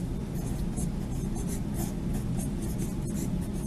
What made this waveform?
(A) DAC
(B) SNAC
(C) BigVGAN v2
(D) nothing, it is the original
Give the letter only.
D